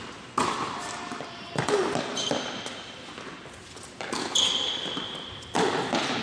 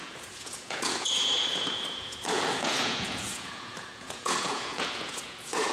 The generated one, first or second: second